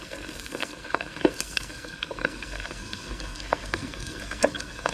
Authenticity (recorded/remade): remade